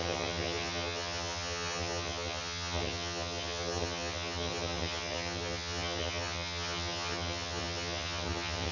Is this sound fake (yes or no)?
yes